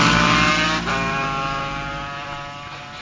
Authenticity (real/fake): real